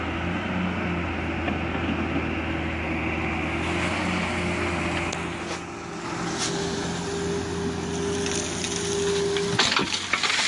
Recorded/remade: recorded